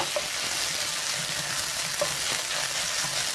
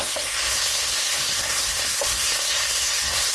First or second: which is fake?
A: second